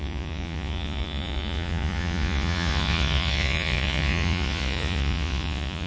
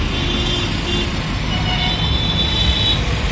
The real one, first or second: second